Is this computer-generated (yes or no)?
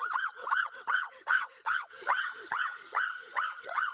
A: yes